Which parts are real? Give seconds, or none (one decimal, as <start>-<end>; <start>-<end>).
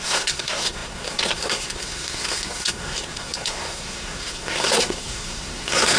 none